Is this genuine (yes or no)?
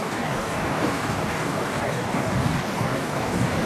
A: no